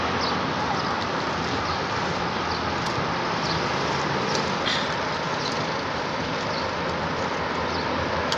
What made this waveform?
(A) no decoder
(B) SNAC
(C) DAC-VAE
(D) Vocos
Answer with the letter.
A